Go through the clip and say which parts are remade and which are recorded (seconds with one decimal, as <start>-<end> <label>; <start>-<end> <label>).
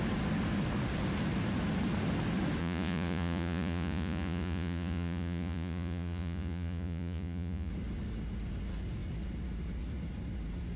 0.0-2.6 recorded; 2.6-7.7 remade; 7.7-10.8 recorded